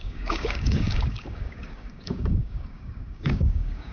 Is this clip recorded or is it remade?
remade